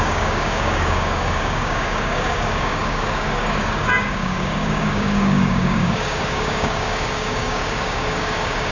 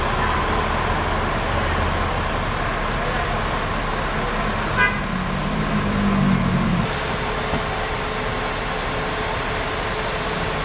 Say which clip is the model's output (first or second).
first